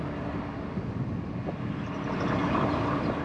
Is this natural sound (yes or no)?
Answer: yes